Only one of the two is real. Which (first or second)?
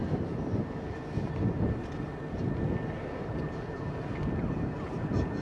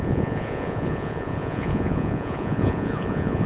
first